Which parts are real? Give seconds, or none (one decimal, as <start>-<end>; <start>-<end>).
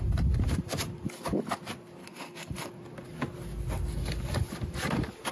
0.0-2.0; 2.7-5.3